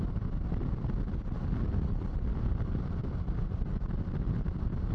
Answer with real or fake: real